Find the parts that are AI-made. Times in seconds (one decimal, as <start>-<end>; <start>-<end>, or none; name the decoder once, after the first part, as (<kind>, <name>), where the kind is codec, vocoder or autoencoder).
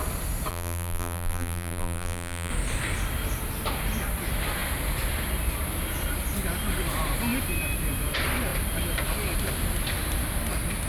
0.5-2.5 (vocoder, BigVGAN v2)